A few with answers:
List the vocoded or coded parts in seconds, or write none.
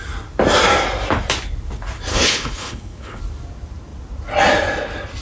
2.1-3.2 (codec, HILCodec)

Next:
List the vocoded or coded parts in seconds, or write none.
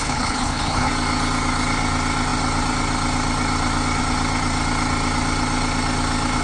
0.0-0.9 (codec, HILCodec)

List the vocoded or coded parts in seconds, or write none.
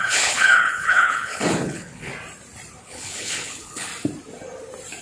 0.0-2.1 (codec, HILCodec); 2.8-3.9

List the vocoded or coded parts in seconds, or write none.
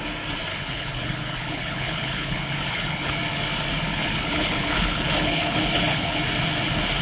0.5-3.1 (codec, HILCodec); 3.9-6.2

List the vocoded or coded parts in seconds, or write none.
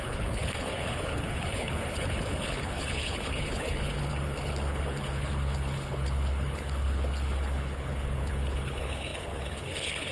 0.0-10.1 (codec, HILCodec)